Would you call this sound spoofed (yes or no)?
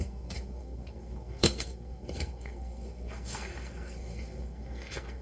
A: yes